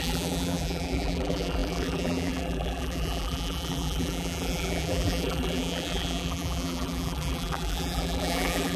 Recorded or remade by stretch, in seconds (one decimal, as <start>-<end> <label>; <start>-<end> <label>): 0.0-8.8 remade